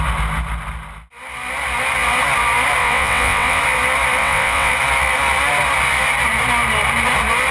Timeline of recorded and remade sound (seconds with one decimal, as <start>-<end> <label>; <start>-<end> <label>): 0.0-2.8 recorded; 2.8-3.6 remade; 3.6-4.2 recorded; 4.2-4.7 remade; 4.7-7.5 recorded